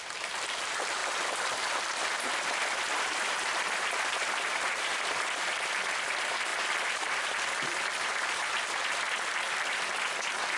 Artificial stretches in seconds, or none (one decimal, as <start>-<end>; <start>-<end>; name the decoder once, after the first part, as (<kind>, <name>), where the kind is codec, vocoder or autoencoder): 0.0-6.5 (vocoder, BigVGAN v2); 7.5-10.6